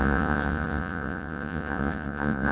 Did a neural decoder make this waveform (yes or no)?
yes